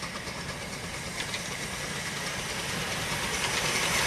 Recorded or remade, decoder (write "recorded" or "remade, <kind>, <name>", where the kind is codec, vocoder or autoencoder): recorded